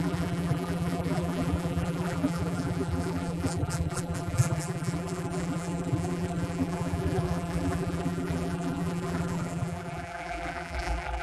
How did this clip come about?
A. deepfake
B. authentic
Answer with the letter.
A